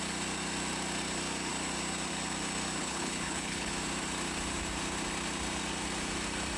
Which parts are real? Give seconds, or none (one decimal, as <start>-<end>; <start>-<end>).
0.0-2.8; 3.7-6.6

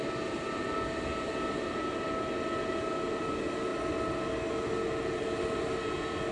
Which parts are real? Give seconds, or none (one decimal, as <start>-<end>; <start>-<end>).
0.0-6.3

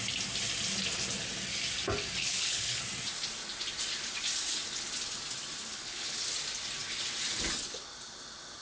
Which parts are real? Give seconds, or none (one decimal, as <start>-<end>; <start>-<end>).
0.0-2.2; 2.8-5.7; 6.2-8.6

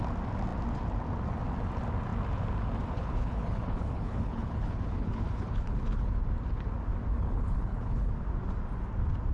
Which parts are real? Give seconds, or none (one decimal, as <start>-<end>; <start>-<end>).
0.0-3.0; 6.2-7.1; 8.1-9.3

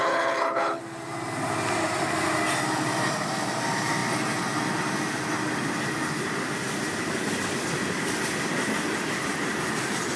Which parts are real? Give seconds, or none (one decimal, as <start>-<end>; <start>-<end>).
0.8-10.2